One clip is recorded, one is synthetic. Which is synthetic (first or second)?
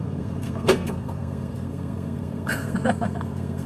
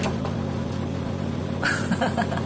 first